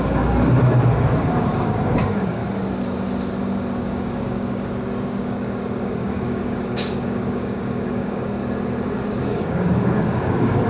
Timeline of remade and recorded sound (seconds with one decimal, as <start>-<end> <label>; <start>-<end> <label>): 0.0-2.4 remade; 2.4-3.8 recorded; 3.8-8.4 remade; 8.4-9.1 recorded; 9.1-10.7 remade